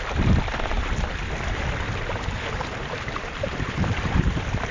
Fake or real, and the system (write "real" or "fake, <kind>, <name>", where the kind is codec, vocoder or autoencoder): real